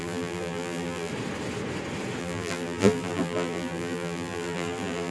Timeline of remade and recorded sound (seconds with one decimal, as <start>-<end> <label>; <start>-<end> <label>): 0.0-1.1 remade; 1.1-2.2 recorded; 2.2-5.1 remade